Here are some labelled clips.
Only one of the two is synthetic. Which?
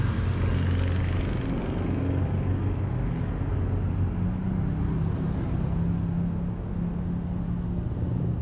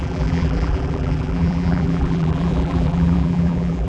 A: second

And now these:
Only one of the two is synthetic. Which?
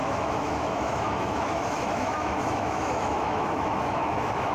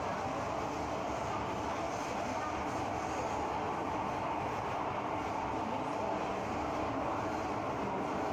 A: first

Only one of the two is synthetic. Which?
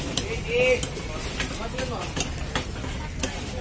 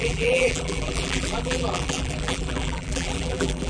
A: second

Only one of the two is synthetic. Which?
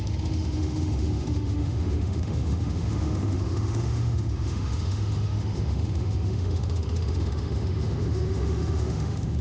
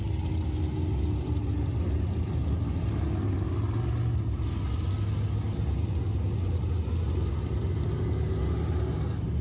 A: first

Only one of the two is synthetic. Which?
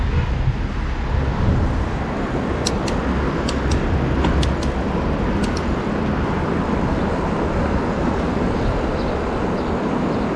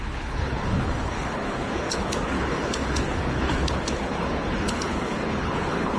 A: second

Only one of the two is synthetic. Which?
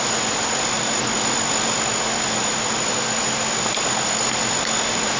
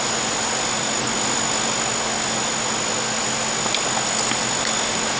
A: first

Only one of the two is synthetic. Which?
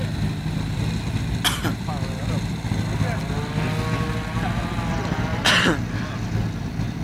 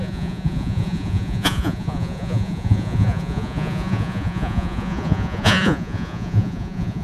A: second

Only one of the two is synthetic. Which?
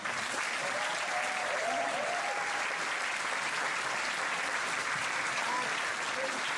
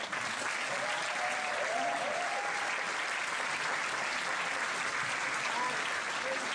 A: first